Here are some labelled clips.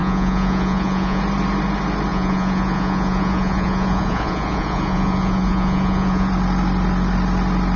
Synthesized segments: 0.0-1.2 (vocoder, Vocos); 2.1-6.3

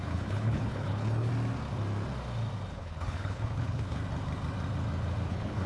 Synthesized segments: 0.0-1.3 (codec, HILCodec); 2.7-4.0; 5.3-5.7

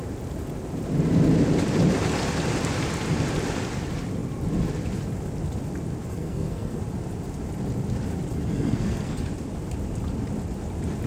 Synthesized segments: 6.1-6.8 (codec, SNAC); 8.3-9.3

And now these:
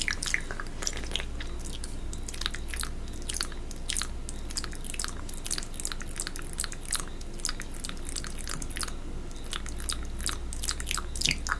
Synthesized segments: none